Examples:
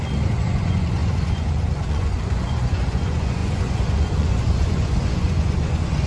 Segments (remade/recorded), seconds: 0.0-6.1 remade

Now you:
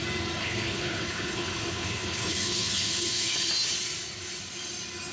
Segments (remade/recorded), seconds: 0.0-0.4 recorded; 0.4-3.5 remade; 3.5-5.1 recorded

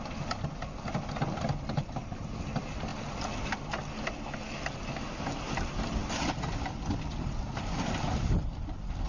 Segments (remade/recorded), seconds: 0.0-9.1 recorded

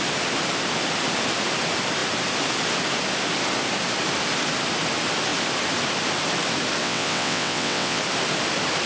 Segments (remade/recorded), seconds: 0.0-6.8 recorded; 6.8-8.0 remade; 8.0-8.9 recorded

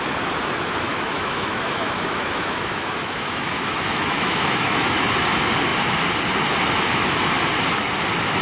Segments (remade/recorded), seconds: 0.0-0.9 recorded; 0.9-5.0 remade; 5.0-8.4 recorded